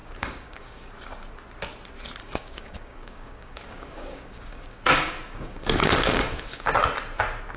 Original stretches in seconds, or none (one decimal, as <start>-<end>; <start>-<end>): 0.9-2.2; 6.8-7.6